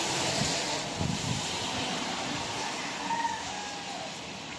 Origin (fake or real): real